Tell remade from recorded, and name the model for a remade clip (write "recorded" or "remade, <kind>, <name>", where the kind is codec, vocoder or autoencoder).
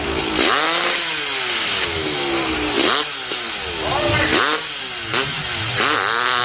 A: recorded